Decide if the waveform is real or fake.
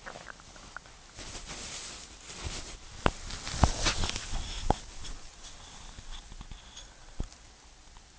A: real